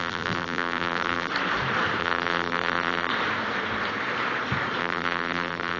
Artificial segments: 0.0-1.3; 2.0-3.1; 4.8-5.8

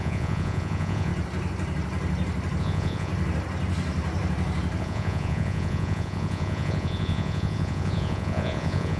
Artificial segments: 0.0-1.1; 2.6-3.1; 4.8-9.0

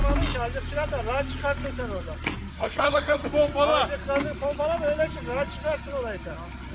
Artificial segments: 2.5-3.3

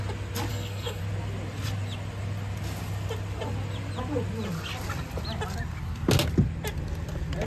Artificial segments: 0.5-1.0